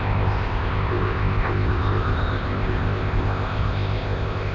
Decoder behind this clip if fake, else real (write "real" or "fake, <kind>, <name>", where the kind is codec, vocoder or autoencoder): fake, codec, ZipCodec